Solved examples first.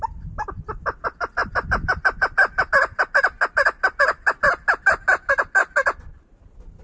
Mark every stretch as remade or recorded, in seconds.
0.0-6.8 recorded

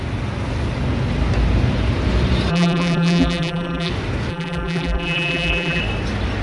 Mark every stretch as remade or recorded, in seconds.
0.0-2.5 recorded; 2.5-3.9 remade; 3.9-4.3 recorded; 4.3-5.8 remade; 5.8-6.4 recorded

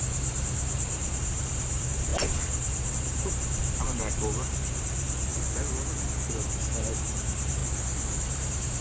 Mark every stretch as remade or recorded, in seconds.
0.0-5.3 remade; 5.3-6.3 recorded; 6.3-7.6 remade; 7.6-8.2 recorded; 8.2-8.8 remade

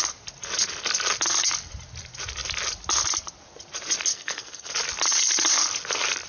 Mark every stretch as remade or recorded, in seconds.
0.0-4.1 recorded; 4.1-4.7 remade; 4.7-6.3 recorded